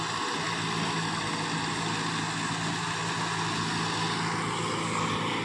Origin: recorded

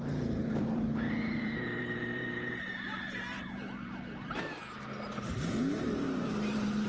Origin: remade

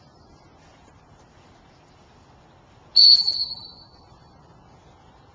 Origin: recorded